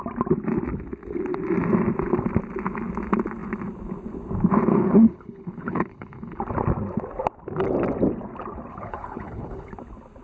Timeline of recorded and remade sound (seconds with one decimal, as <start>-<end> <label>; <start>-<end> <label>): 0.0-4.7 recorded; 4.7-6.4 remade; 6.4-8.7 recorded; 8.7-9.7 remade; 9.7-10.2 recorded